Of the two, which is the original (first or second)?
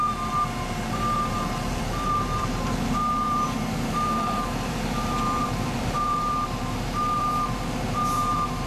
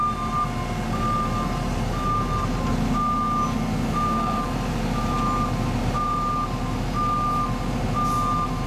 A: second